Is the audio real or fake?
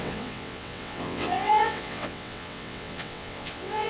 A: fake